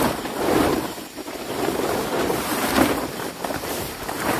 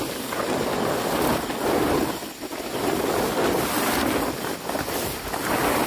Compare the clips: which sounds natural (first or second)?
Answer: second